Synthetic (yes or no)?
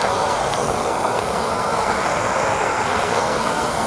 yes